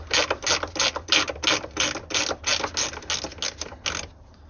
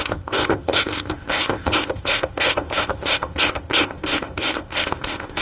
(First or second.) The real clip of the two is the first